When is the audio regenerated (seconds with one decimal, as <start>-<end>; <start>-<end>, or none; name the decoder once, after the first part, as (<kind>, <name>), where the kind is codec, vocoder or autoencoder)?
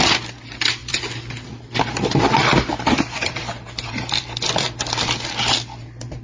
0.8-4.5 (vocoder, BigVGAN v2)